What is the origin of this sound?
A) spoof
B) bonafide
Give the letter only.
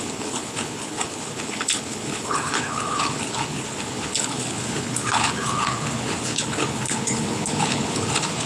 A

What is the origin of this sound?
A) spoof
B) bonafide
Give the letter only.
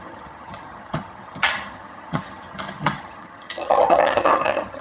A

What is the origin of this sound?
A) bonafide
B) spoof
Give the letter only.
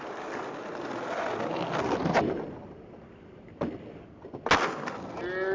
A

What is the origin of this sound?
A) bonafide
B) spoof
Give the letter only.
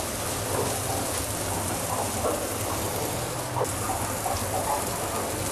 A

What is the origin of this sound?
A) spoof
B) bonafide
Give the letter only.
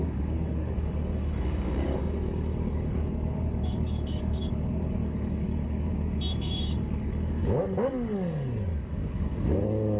A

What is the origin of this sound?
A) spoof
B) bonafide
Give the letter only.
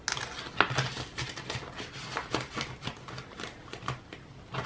B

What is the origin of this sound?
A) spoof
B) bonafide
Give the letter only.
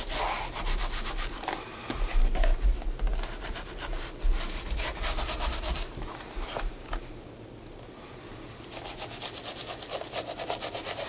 B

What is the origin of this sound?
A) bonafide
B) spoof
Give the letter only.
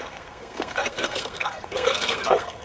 B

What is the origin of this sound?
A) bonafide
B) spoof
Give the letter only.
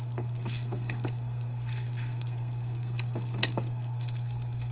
B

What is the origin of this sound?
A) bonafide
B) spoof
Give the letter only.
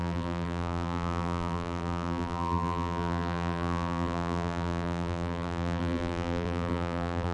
B